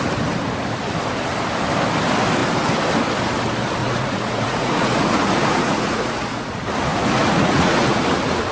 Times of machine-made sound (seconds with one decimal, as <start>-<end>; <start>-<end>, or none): 3.8-6.5; 6.9-8.0